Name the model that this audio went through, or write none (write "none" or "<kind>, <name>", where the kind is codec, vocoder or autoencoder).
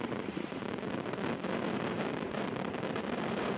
vocoder, BigVGAN v2